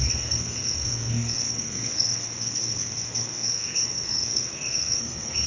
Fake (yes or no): yes